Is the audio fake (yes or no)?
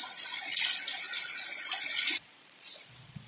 yes